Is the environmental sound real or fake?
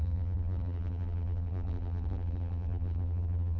fake